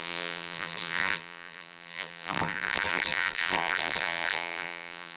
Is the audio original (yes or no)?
no